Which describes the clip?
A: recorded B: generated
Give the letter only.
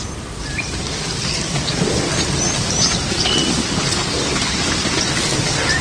A